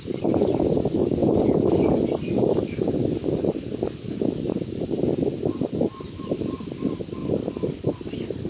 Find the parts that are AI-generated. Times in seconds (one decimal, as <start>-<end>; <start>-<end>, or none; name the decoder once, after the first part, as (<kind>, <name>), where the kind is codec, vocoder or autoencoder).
0.0-1.2 (vocoder, BigVGAN v2); 5.7-8.5